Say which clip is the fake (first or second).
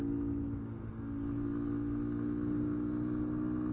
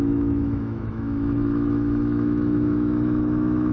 second